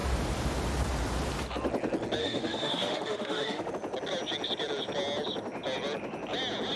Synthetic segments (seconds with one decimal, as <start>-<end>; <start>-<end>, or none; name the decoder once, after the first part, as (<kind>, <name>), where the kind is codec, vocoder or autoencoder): 2.2-3.7 (autoencoder, DAC-VAE)